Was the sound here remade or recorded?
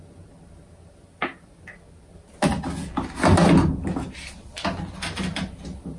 recorded